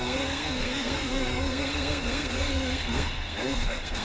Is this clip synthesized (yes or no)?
yes